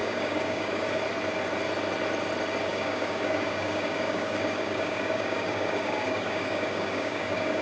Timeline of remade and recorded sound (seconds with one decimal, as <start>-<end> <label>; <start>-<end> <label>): 0.0-1.0 remade; 1.0-2.7 recorded; 2.7-7.6 remade